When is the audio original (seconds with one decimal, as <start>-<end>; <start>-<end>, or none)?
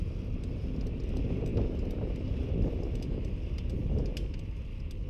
0.0-5.1